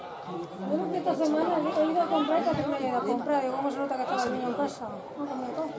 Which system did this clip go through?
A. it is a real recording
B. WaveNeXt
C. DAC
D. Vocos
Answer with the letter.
A